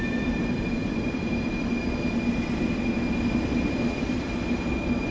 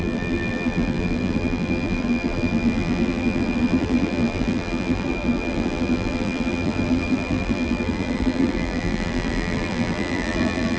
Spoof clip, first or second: second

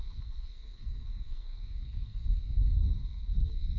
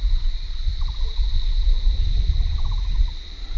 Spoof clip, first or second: first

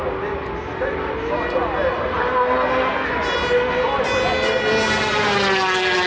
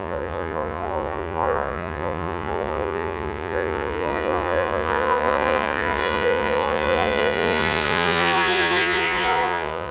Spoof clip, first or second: second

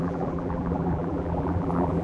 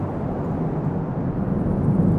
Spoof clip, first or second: first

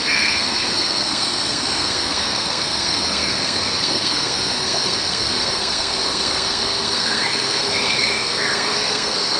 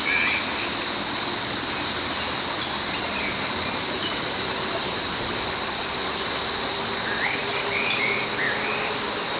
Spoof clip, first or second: first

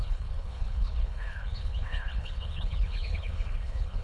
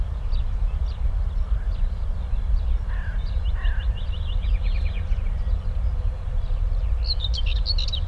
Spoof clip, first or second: first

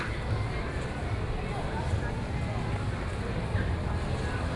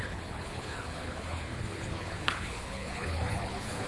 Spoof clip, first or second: second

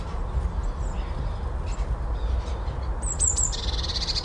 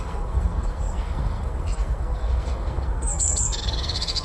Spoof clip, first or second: second